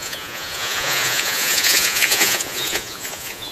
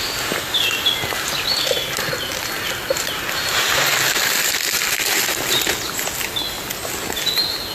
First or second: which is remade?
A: first